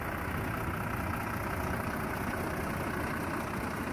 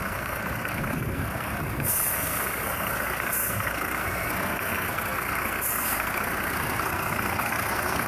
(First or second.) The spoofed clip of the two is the second